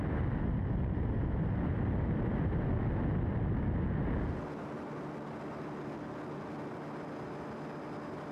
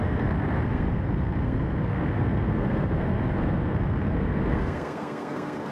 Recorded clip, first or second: first